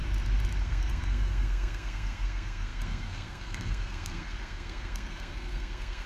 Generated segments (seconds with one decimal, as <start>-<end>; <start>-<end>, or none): 0.6-6.1